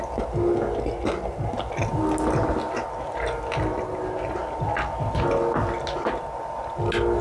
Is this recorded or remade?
recorded